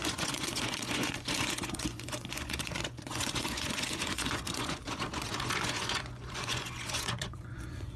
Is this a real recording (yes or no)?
no